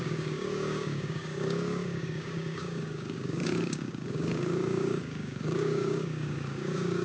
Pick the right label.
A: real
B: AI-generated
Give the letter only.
B